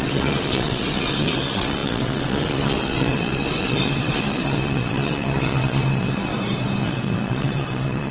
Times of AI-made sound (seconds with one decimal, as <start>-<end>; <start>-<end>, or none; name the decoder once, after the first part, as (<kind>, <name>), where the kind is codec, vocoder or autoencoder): 0.0-6.3 (vocoder, WaveNeXt); 6.8-8.1